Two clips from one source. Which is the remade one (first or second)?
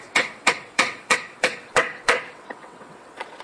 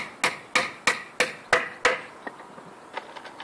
first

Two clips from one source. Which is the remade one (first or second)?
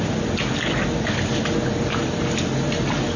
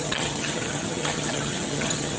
second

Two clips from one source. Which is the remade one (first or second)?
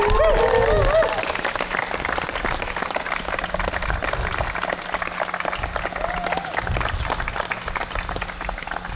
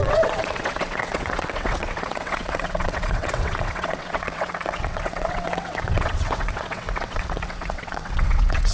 second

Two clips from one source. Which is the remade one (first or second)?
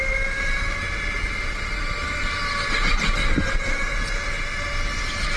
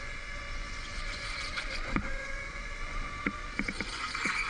second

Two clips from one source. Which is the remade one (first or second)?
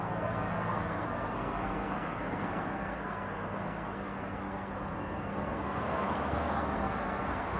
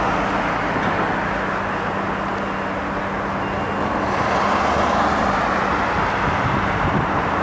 first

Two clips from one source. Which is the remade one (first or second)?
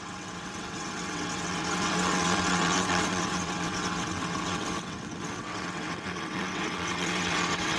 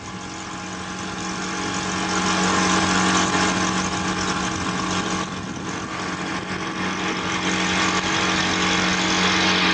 first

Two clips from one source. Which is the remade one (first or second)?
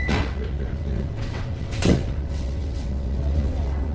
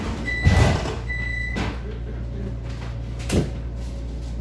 first